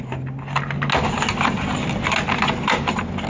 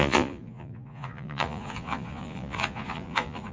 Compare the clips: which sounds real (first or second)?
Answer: first